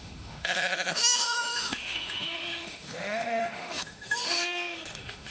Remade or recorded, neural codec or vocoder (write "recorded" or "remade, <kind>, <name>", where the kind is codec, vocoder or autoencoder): remade, autoencoder, DAC-VAE